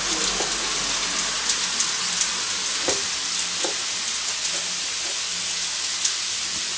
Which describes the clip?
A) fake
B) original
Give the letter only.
B